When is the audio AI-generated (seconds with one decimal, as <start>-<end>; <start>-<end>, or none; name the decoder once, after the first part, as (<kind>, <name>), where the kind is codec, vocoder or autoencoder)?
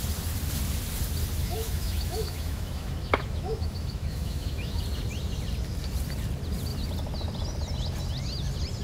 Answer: 1.4-4.8 (autoencoder, DAC-VAE)